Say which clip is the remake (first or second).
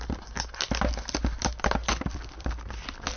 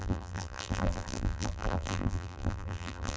second